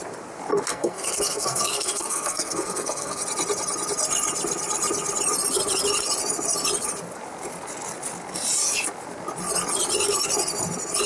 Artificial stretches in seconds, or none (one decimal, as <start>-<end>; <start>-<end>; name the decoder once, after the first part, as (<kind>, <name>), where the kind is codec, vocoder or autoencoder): 0.7-3.2 (codec, SNAC)